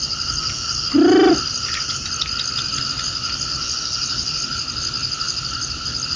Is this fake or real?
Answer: real